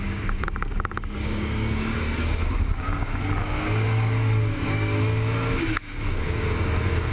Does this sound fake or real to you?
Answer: fake